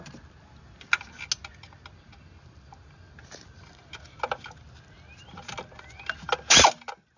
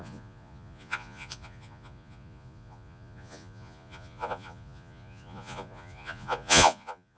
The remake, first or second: second